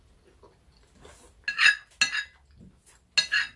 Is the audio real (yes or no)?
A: yes